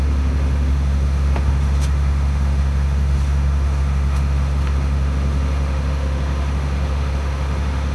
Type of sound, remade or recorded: remade